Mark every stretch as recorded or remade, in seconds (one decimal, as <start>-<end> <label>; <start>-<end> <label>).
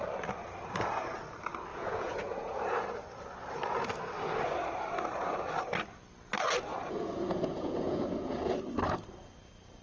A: 0.0-1.7 recorded; 1.7-2.6 remade; 2.6-6.7 recorded; 6.7-8.6 remade; 8.6-9.8 recorded